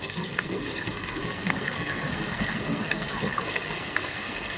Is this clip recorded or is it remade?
remade